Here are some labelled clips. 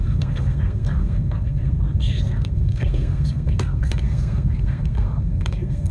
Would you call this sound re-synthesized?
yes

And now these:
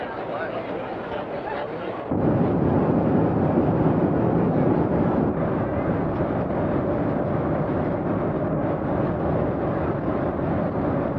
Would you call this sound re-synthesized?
no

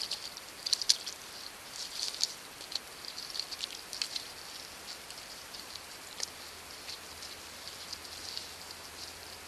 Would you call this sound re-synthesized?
no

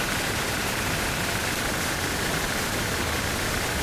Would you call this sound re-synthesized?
no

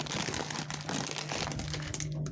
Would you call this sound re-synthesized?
no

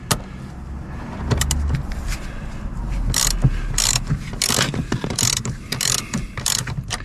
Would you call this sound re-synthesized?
no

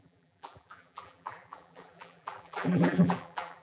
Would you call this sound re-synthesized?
yes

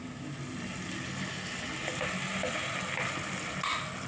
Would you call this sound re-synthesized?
no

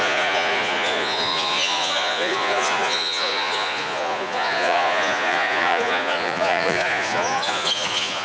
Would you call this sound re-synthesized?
yes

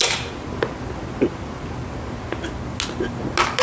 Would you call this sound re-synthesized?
no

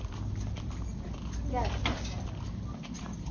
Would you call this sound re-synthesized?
no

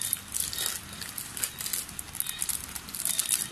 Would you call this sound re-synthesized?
no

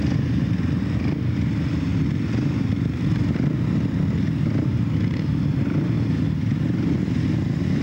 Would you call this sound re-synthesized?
no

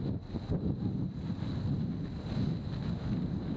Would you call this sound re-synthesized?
no